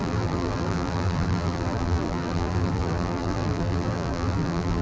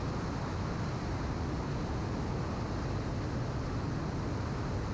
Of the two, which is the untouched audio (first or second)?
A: second